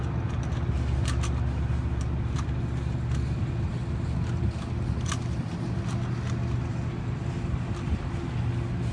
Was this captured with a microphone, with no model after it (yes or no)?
yes